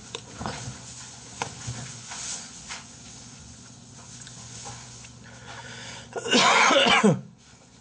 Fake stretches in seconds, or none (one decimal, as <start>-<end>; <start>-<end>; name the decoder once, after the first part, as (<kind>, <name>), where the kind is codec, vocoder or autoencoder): 0.0-7.8 (vocoder, Vocos)